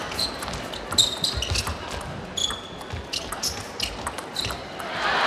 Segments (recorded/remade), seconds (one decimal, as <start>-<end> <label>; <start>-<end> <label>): 0.0-5.3 recorded